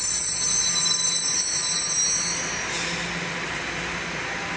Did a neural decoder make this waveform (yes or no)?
no